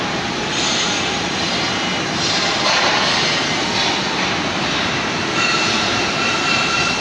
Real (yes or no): no